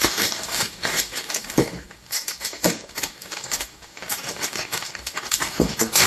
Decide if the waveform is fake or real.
fake